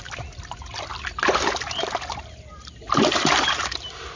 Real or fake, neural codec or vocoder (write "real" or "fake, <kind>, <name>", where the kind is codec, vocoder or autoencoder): real